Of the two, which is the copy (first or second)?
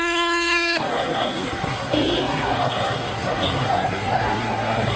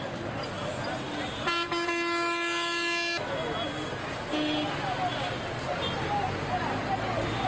first